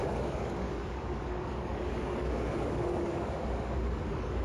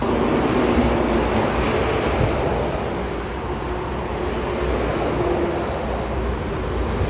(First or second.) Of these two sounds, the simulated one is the first